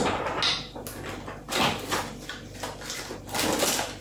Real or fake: real